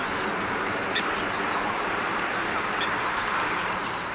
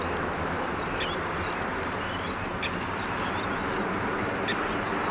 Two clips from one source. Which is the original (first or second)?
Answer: second